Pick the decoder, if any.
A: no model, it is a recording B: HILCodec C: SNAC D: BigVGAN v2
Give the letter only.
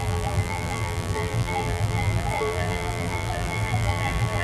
D